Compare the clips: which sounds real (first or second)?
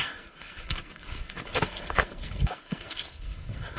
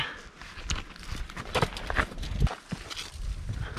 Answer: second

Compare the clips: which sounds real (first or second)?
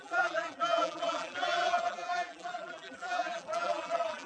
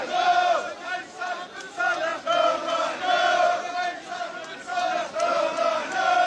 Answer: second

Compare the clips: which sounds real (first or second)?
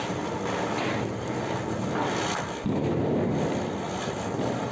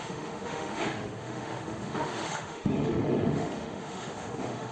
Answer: first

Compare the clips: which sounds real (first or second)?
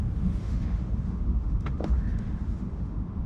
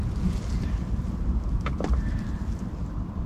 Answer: second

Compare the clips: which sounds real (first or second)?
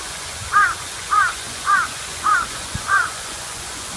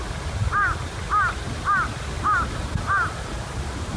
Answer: second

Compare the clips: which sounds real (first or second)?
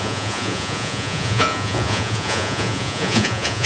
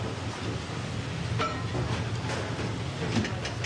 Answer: second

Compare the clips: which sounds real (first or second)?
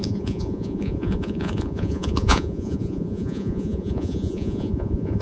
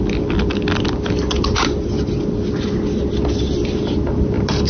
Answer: second